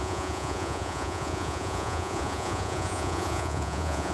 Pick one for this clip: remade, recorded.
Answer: remade